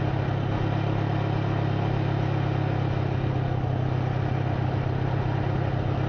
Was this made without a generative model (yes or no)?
yes